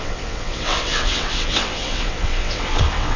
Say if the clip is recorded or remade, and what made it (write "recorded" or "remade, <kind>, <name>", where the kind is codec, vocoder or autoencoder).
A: remade, vocoder, WaveNeXt